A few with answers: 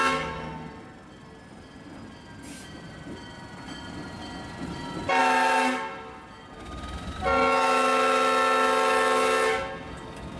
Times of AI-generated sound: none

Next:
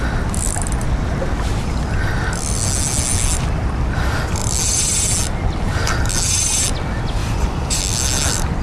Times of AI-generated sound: 7.2-7.8 (vocoder, Vocos)

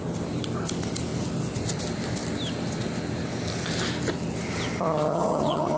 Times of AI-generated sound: 5.1-5.8 (vocoder, HiFi-GAN)

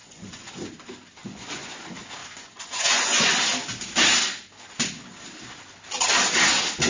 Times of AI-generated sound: 0.0-0.5 (vocoder, Vocos); 1.2-1.7; 2.2-3.3

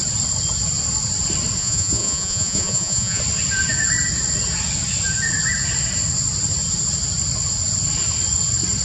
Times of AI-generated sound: 1.6-3.2 (vocoder, Vocos)

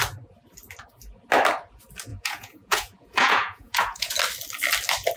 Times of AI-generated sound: 2.1-4.1 (vocoder, Vocos)